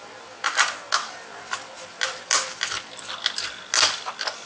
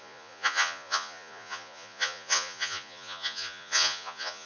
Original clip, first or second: first